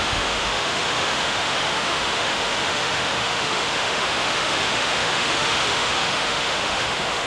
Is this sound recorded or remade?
remade